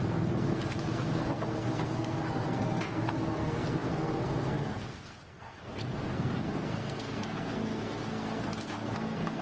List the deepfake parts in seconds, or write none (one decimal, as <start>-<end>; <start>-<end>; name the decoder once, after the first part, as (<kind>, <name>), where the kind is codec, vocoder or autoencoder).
0.0-9.4 (codec, SNAC)